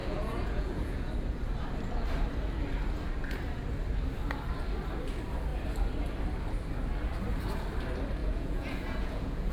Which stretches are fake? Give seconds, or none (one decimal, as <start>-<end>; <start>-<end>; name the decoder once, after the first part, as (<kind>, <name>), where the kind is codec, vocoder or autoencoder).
0.0-1.1 (vocoder, Vocos); 8.2-9.5